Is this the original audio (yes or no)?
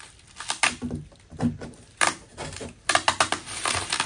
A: yes